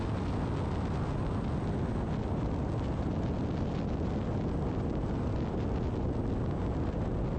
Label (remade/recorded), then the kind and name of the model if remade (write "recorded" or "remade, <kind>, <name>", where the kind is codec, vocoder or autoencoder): recorded